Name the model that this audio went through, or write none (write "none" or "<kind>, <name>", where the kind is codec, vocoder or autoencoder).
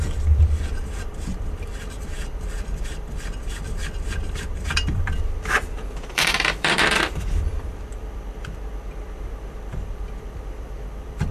vocoder, BigVGAN v2